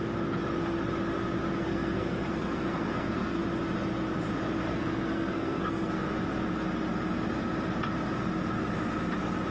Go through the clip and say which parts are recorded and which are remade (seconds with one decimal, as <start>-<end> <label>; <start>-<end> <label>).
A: 0.0-1.6 recorded; 1.6-3.4 remade; 3.4-4.7 recorded; 4.7-6.0 remade; 6.0-9.5 recorded